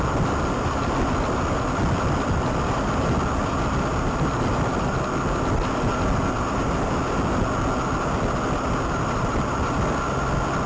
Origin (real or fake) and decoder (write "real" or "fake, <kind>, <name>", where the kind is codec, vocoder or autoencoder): real